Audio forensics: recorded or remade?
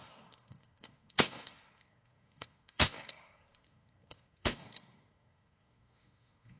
remade